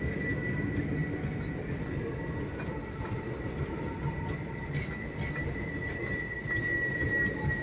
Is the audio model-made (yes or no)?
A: no